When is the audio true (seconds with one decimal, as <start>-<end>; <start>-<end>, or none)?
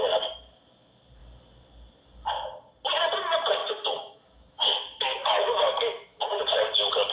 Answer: 0.0-3.6; 6.4-7.1